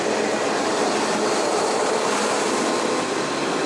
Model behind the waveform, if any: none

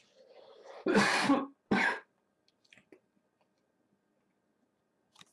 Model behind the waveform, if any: none